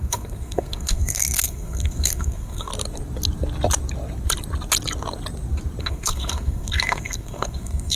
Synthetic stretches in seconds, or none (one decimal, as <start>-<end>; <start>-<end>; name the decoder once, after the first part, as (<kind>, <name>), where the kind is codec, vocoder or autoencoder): 0.0-2.7 (codec, SNAC); 5.8-8.0